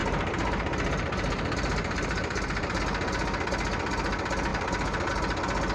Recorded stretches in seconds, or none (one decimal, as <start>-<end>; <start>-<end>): 2.8-4.5; 5.1-5.7